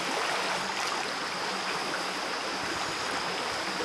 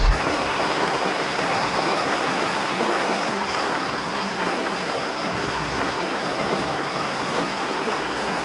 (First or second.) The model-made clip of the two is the second